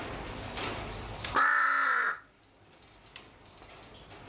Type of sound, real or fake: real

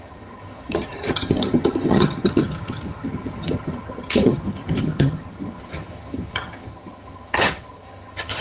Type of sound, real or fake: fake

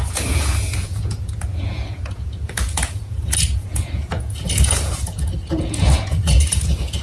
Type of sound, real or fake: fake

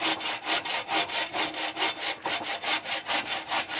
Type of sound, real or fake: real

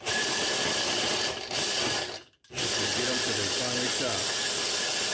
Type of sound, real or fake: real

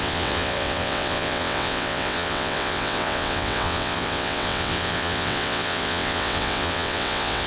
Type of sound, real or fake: fake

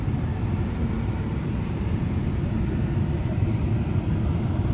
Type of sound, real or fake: fake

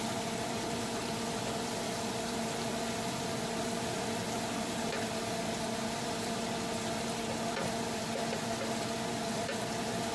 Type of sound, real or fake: fake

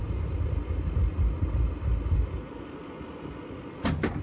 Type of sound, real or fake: real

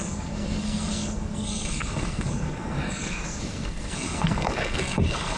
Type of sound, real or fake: fake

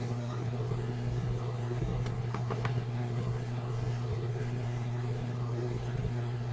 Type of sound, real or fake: fake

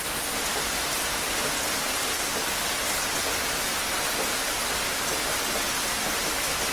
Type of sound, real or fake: real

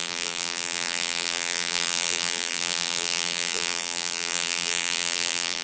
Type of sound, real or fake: fake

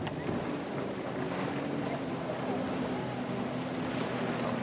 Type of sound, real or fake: real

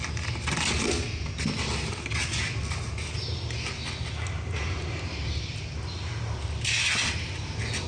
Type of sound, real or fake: real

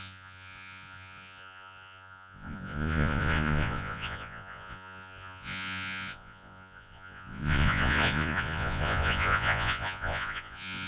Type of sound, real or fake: fake